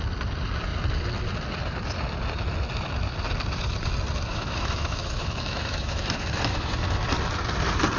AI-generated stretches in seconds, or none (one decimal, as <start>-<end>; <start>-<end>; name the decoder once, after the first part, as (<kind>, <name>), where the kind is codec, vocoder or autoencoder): 4.3-6.8 (autoencoder, DAC-VAE)